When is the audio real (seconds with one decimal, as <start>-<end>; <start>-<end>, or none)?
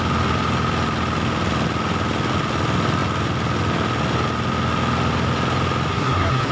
0.0-5.9